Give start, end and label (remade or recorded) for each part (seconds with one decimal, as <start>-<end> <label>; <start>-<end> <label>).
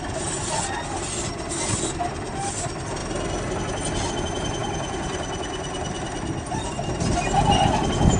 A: 0.0-8.2 recorded